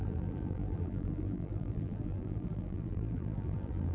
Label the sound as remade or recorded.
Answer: remade